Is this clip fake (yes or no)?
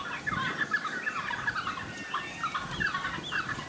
no